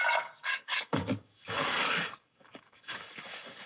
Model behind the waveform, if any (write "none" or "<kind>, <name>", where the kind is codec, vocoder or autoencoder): codec, DAC